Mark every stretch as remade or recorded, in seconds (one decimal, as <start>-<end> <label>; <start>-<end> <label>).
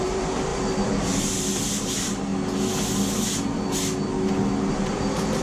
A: 0.0-2.3 remade; 2.3-4.7 recorded; 4.7-5.4 remade